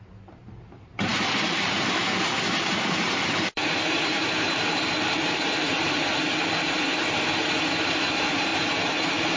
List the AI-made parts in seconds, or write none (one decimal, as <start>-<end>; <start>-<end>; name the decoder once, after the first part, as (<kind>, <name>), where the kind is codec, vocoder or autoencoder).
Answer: 0.0-6.1 (vocoder, BigVGAN v2); 7.9-9.4